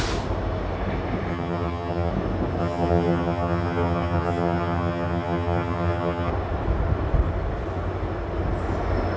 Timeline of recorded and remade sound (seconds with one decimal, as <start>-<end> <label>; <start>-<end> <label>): 0.0-1.3 recorded; 1.3-2.1 remade; 2.1-2.6 recorded; 2.6-6.3 remade; 6.3-9.2 recorded